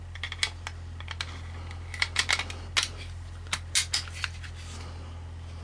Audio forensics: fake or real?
real